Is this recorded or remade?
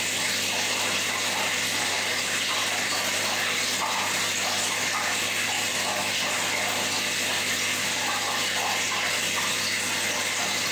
recorded